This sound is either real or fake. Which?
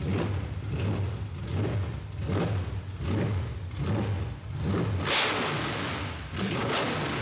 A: real